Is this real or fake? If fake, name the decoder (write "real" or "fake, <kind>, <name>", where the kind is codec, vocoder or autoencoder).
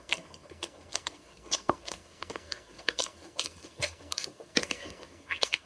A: fake, codec, SNAC